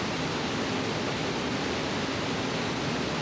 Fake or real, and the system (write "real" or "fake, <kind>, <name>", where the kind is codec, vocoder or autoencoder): real